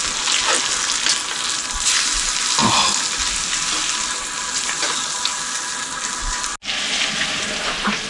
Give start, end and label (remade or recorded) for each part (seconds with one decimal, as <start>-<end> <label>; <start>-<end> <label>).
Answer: 0.0-8.1 recorded